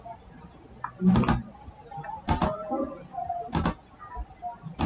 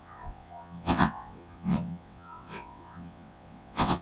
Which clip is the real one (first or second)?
first